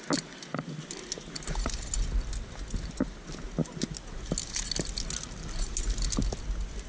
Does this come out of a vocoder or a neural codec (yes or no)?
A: no